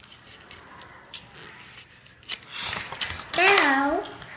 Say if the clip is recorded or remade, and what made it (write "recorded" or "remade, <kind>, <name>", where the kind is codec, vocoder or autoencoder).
recorded